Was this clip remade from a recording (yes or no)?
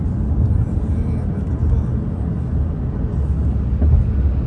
no